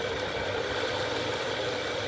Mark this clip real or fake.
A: fake